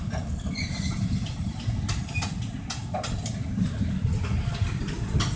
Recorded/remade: recorded